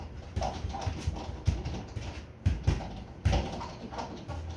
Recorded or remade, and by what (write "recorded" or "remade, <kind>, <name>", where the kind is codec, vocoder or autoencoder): recorded